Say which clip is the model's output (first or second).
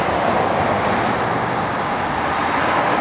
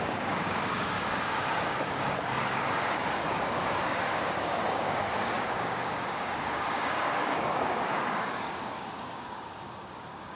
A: second